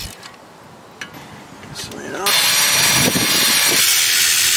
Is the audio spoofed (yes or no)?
no